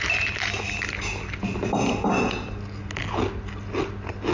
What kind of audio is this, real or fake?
real